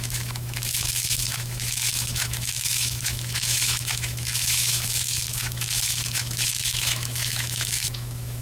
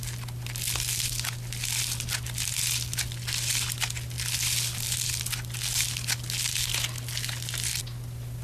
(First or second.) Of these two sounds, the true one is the second